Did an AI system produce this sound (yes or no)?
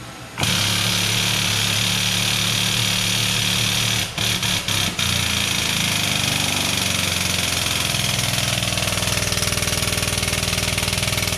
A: no